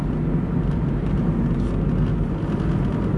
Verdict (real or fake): real